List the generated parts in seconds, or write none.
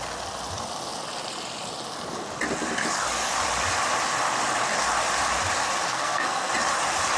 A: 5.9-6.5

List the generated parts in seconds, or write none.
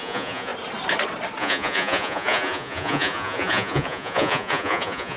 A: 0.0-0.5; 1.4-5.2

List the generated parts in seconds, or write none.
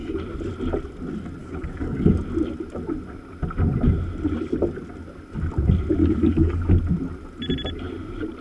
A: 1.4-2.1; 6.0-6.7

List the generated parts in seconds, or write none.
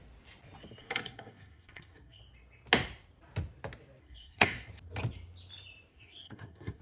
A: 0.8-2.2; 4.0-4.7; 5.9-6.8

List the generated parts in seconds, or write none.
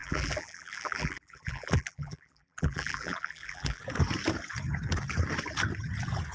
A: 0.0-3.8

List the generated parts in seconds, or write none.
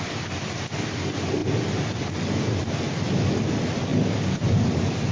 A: none